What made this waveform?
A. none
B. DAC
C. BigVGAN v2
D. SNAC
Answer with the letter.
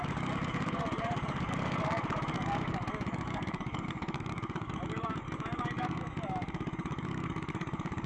B